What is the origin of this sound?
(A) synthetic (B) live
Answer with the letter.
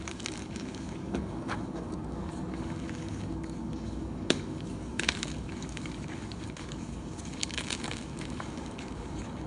A